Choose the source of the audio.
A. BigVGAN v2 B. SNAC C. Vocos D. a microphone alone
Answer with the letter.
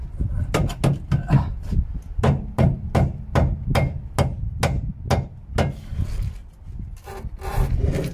D